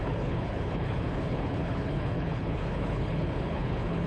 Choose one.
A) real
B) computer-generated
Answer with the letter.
B